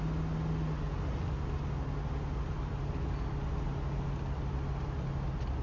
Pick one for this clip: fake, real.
real